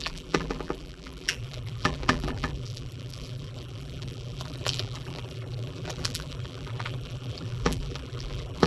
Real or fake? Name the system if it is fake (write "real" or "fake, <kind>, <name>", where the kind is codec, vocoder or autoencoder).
fake, vocoder, BigVGAN v2